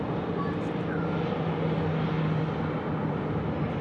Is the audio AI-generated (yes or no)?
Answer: no